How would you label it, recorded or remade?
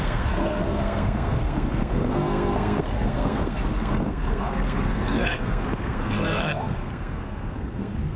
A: remade